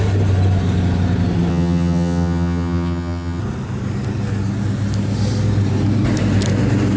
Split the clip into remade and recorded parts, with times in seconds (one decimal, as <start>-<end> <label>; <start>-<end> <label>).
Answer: 0.0-1.5 recorded; 1.5-3.4 remade; 3.4-7.0 recorded